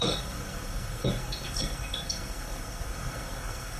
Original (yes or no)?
no